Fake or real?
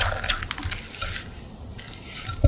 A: real